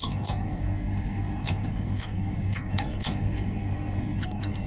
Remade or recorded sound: remade